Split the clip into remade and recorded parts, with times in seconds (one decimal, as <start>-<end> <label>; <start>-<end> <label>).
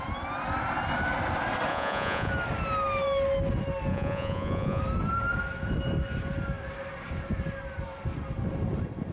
0.0-1.7 recorded; 1.7-2.3 remade; 2.3-3.9 recorded; 3.9-4.8 remade; 4.8-9.1 recorded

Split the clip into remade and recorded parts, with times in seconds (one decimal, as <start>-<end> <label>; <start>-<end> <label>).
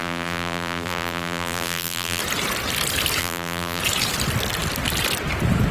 0.0-2.2 remade; 2.2-3.2 recorded; 3.2-3.8 remade; 3.8-5.7 recorded